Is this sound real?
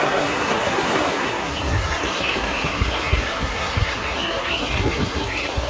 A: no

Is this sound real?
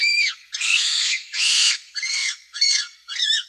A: no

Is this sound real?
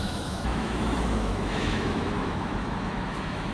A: no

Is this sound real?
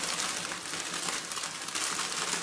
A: yes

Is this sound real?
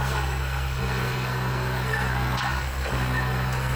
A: no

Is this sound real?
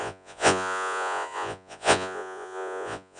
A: no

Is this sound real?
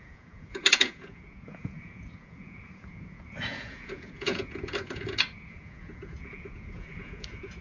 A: no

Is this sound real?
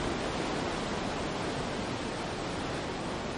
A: yes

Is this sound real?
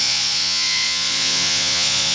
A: no